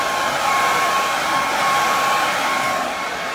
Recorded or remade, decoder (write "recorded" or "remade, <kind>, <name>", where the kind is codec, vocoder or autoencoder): remade, vocoder, BigVGAN v2